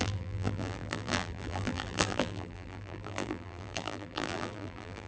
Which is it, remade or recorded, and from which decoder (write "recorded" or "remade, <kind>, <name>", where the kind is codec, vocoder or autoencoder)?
remade, vocoder, BigVGAN v2